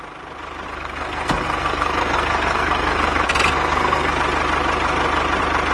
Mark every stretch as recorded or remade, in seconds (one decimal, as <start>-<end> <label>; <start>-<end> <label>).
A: 0.0-0.7 recorded; 0.7-4.1 remade; 4.1-5.7 recorded